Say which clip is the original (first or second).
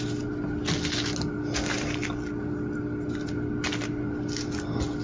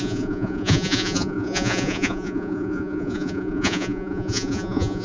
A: first